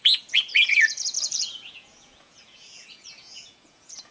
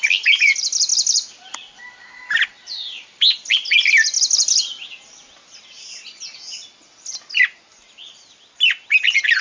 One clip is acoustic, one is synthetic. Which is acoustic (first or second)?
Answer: second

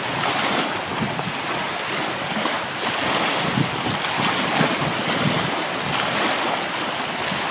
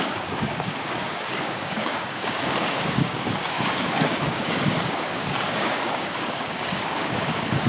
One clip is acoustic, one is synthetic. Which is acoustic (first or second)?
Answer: first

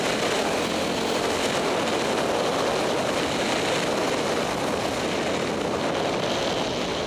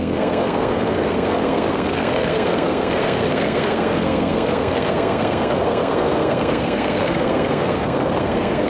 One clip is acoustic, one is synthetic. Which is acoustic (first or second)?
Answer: first